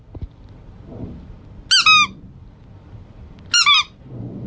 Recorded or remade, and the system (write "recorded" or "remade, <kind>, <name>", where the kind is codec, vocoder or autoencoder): recorded